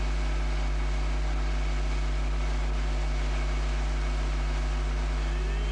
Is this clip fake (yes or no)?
no